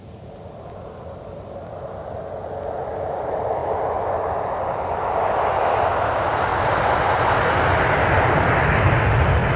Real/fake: real